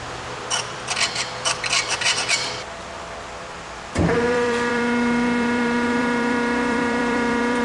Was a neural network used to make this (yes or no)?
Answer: yes